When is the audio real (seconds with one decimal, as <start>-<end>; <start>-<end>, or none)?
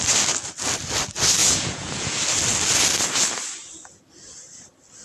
0.0-1.4; 2.2-5.0